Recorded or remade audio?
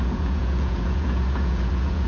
remade